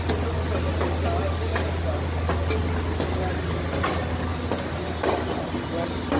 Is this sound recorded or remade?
recorded